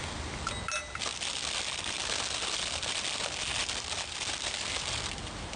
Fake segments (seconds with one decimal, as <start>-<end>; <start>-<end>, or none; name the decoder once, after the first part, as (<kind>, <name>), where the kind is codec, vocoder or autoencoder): none